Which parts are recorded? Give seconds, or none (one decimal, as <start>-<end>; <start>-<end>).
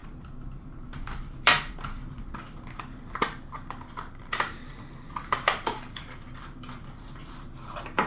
none